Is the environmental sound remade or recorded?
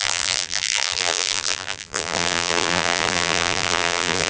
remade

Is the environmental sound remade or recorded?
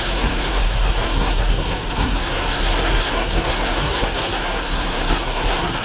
remade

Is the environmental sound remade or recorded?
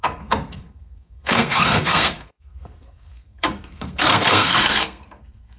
remade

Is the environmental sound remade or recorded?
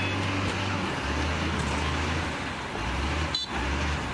recorded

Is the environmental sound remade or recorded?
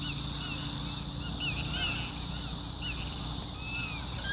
recorded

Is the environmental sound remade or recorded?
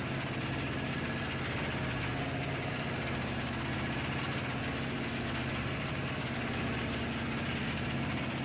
recorded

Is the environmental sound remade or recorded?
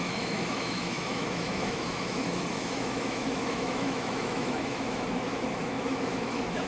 remade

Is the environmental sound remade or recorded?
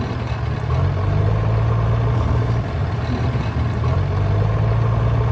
recorded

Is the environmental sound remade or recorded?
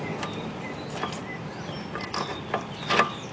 recorded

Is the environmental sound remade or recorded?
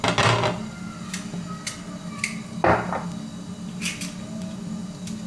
recorded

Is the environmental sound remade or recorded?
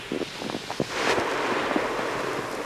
recorded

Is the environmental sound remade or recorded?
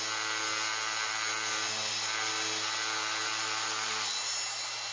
recorded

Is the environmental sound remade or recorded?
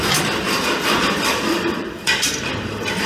remade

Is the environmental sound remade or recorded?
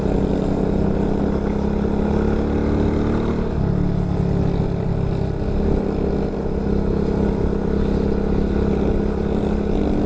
recorded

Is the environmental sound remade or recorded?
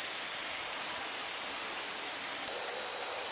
recorded